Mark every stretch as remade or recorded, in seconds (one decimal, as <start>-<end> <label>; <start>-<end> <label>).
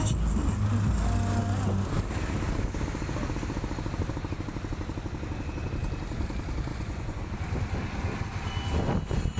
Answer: 0.0-6.7 recorded; 6.7-7.2 remade; 7.2-9.4 recorded